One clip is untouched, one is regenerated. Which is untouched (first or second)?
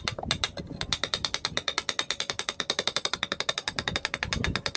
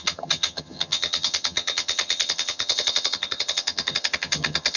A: first